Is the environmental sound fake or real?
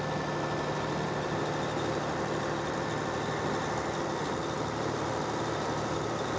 real